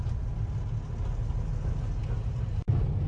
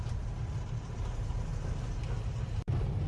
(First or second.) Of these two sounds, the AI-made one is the second